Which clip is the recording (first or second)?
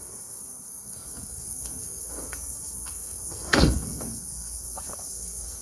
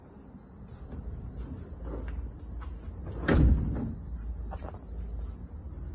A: second